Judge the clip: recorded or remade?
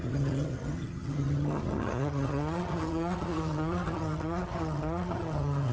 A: remade